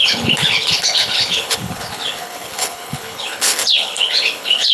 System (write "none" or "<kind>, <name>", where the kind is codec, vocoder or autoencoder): codec, HILCodec